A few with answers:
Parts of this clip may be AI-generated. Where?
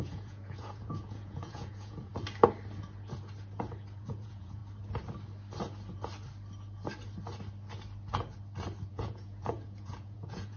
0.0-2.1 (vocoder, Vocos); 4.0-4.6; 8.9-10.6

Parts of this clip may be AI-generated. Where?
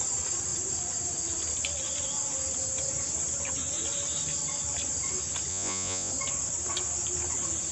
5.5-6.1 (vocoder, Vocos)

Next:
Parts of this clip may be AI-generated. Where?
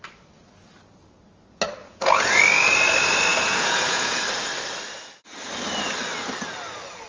1.8-2.4 (vocoder, Vocos); 3.3-4.2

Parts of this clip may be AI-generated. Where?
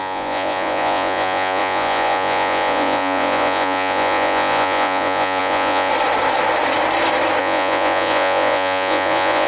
0.0-5.9 (vocoder, Vocos); 7.4-9.5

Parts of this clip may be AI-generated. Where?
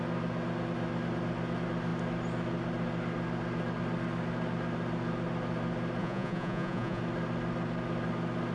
6.0-7.0 (vocoder, Vocos)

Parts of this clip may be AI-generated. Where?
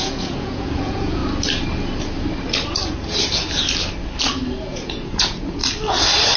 0.0-1.2 (vocoder, Vocos); 4.6-5.6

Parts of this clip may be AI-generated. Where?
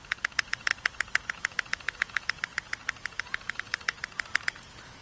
0.0-5.0 (vocoder, Vocos)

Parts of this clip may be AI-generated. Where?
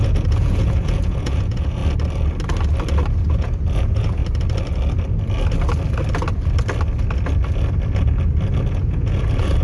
0.0-1.8 (vocoder, Vocos); 3.3-4.2; 8.7-9.6